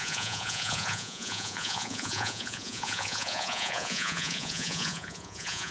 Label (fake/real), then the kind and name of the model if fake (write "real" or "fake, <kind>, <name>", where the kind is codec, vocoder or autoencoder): fake, vocoder, Vocos